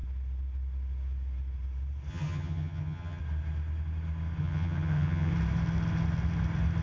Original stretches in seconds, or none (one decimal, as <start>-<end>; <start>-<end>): 0.0-2.1; 3.2-4.4; 5.3-6.8